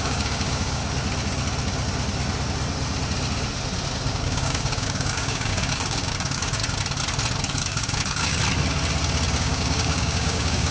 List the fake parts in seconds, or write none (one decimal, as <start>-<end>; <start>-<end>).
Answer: 0.0-0.8; 4.1-6.6; 7.4-8.4; 9.4-10.7